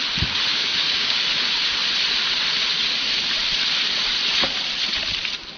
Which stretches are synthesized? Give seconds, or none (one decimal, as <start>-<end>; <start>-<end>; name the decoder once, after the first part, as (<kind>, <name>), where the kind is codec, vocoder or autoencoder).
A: 0.5-1.2 (codec, DAC)